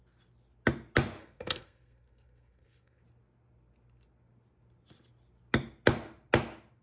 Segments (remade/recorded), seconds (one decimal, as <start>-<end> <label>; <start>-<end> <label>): 0.0-1.2 recorded; 1.2-3.0 remade; 3.0-6.8 recorded